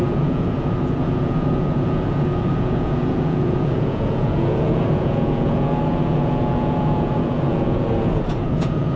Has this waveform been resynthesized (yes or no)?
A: yes